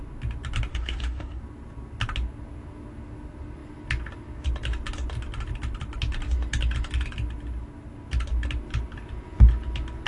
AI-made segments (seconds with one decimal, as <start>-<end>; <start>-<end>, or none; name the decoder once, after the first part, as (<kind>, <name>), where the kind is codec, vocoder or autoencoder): 0.7-1.4 (codec, SNAC)